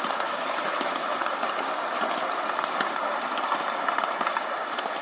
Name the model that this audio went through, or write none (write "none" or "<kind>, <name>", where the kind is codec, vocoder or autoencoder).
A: none